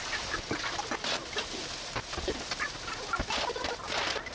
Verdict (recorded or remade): recorded